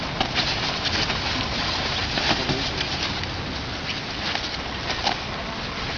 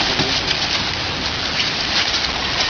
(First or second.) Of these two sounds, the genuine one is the first